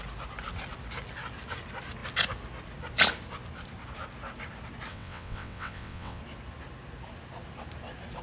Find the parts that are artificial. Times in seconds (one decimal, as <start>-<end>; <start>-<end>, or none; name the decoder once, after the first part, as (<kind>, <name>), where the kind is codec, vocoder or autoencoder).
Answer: 4.9-6.2 (vocoder, WaveNeXt)